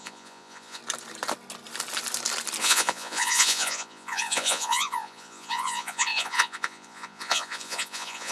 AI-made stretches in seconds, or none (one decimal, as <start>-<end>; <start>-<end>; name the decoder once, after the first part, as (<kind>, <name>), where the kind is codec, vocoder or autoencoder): 0.0-0.8 (vocoder, Vocos); 2.6-8.3